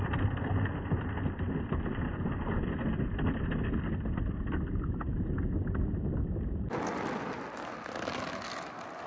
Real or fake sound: real